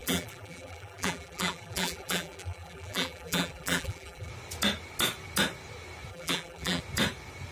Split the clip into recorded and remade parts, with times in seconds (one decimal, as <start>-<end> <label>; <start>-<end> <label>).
0.0-4.3 remade; 4.3-6.1 recorded; 6.1-6.8 remade; 6.8-7.5 recorded